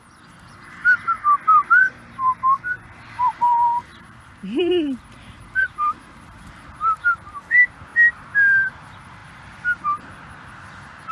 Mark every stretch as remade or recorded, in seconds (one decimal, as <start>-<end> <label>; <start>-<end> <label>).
0.0-7.9 remade; 7.9-8.7 recorded; 8.7-11.1 remade

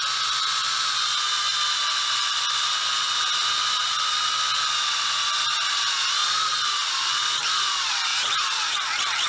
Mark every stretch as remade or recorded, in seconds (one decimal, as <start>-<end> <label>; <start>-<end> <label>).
0.0-1.8 recorded; 1.8-3.2 remade; 3.2-9.3 recorded

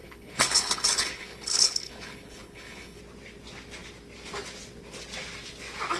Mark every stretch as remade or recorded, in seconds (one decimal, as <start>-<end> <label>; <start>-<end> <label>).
0.0-3.0 remade; 3.0-6.0 recorded